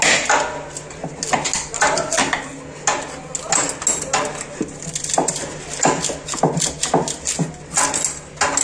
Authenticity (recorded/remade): recorded